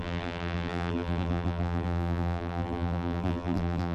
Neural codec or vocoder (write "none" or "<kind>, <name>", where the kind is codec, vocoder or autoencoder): vocoder, BigVGAN v2